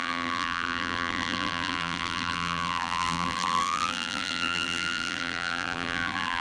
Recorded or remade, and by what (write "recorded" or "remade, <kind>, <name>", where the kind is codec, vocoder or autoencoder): remade, vocoder, BigVGAN v2